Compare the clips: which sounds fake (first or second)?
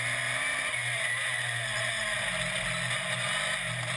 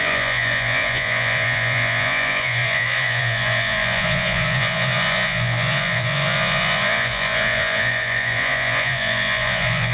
second